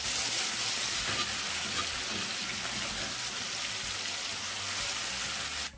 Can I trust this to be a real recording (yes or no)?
yes